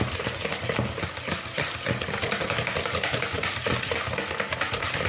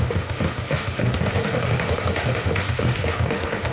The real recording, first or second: first